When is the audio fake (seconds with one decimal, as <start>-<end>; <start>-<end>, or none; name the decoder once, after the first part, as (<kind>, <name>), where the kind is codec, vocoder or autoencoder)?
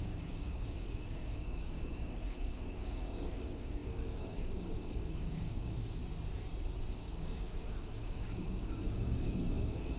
0.0-6.0 (codec, DAC); 6.9-10.0